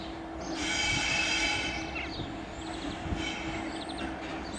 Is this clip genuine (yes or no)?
yes